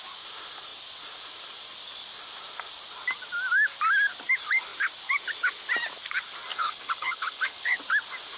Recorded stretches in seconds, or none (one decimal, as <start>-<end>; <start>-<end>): 0.0-6.5; 7.8-8.4